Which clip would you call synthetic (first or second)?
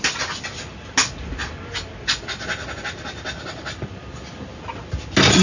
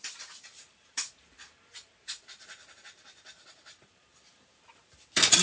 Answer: second